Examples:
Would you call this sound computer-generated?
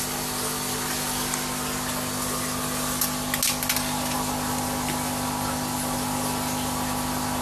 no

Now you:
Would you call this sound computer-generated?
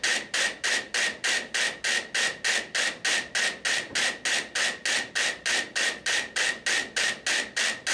no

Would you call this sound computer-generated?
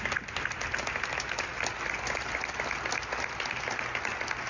no